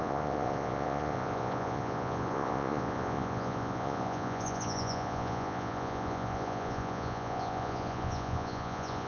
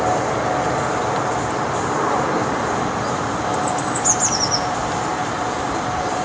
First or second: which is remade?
first